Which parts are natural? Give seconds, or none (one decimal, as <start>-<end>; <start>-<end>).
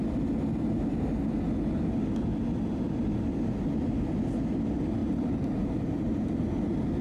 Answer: 0.0-5.0; 6.4-7.0